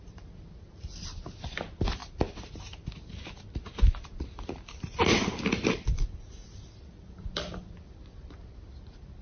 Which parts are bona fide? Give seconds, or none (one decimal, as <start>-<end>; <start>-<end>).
2.0-5.9